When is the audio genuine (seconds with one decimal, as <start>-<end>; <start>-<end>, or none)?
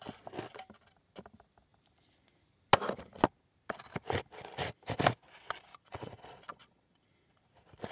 0.0-5.7; 7.5-7.9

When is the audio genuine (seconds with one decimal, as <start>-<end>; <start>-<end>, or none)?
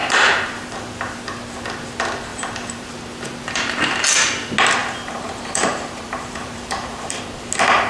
1.2-2.3; 2.9-4.8; 7.2-7.9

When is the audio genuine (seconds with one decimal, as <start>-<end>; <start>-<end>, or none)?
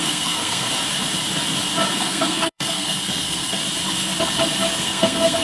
0.7-1.9; 3.6-4.8